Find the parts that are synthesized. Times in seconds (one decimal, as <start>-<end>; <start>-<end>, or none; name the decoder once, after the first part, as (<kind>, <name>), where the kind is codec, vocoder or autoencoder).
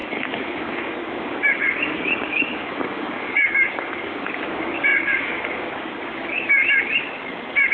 0.0-6.6 (codec, DAC)